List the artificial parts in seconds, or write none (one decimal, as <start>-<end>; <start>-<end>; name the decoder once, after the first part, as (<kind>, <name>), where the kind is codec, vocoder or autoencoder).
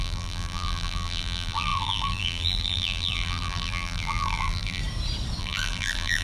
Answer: 0.0-4.8 (vocoder, BigVGAN v2); 5.4-6.2